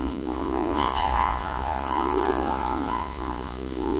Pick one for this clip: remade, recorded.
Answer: remade